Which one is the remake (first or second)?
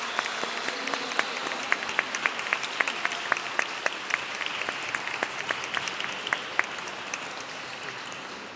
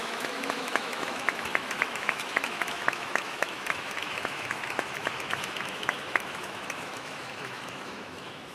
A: second